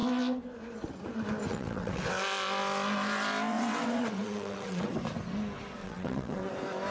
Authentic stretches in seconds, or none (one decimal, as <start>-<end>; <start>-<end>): 0.0-1.5; 2.1-3.5; 4.9-5.8; 6.5-6.9

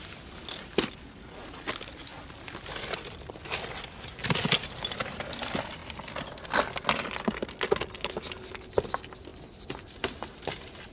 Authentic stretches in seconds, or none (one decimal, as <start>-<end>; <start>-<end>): 0.0-10.9

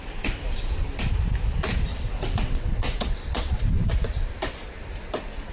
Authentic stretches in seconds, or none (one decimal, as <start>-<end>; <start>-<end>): 0.0-1.9; 3.9-5.5

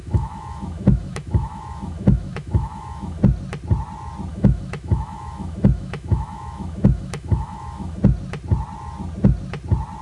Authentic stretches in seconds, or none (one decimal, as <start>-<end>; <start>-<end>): 3.2-4.3; 8.0-10.0

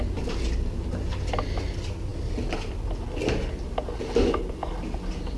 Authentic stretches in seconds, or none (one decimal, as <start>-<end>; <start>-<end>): 0.0-5.4

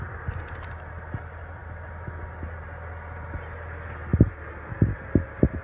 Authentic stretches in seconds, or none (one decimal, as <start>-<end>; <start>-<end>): 0.0-5.6